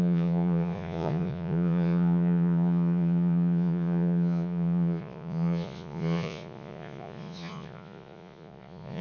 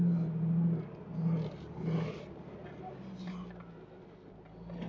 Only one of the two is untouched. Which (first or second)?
second